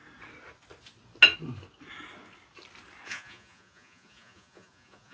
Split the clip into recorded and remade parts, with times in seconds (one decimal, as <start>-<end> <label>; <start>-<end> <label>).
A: 0.0-3.1 recorded; 3.1-5.1 remade